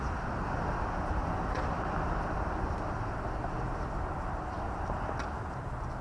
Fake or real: real